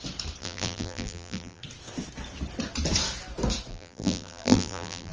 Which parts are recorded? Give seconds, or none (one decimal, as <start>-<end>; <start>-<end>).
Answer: 0.0-0.4; 1.6-3.7